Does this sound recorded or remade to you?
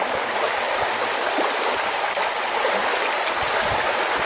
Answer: recorded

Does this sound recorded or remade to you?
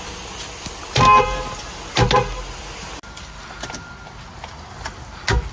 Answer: recorded